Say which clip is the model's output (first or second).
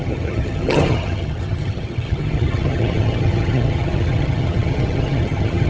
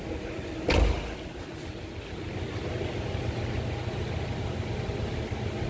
first